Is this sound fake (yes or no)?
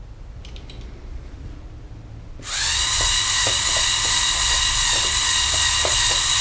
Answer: no